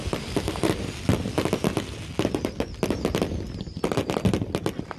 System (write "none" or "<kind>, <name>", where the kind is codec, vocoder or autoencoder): none